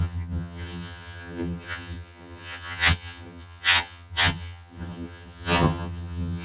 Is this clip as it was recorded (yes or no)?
no